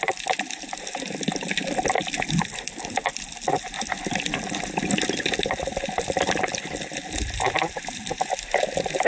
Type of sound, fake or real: real